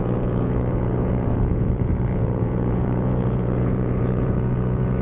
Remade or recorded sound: remade